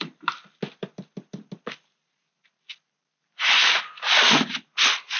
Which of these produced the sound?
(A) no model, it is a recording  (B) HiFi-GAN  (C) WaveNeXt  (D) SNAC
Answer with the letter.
A